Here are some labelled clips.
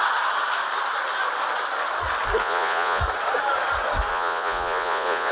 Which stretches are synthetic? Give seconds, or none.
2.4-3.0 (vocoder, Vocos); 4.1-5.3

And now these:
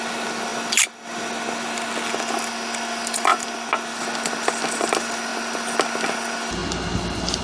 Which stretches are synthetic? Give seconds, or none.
none

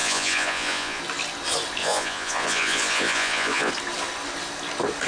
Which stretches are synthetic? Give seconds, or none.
0.0-1.0 (vocoder, Vocos); 1.8-3.7